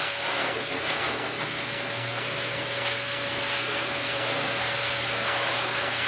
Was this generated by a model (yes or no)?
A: yes